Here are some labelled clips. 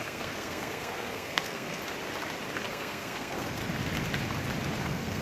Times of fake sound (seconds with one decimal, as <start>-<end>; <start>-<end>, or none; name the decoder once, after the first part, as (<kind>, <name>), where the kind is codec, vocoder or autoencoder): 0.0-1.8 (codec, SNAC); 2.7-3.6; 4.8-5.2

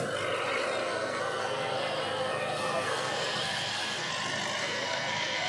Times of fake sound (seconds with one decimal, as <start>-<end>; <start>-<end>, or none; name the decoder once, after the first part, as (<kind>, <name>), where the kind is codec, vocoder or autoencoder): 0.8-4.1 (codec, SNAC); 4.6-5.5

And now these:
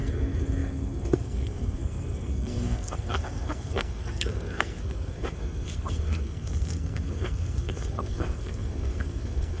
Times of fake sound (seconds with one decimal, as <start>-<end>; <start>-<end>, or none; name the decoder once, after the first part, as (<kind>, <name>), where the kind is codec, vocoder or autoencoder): 0.0-9.6 (codec, SNAC)